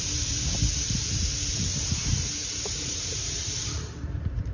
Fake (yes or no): yes